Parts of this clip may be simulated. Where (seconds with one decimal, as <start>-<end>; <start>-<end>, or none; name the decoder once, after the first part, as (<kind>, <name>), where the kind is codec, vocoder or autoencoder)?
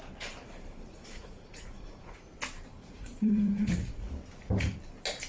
0.9-2.4 (vocoder, Vocos); 2.8-4.1